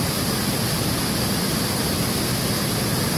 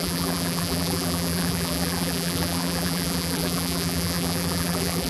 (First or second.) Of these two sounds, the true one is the first